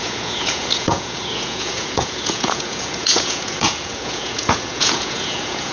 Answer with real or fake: fake